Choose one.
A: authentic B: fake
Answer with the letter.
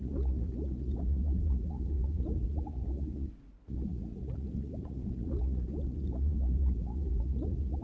B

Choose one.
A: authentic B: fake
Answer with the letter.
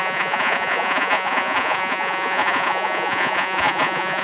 B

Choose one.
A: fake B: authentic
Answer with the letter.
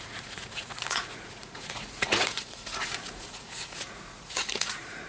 A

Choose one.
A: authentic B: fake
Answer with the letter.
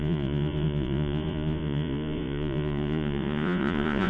B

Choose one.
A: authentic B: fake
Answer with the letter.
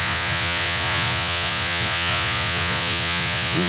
B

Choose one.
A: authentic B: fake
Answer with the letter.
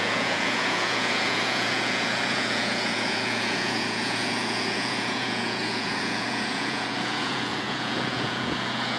B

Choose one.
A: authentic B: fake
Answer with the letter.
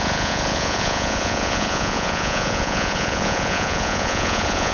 B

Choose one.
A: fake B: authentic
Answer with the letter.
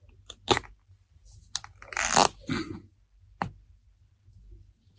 B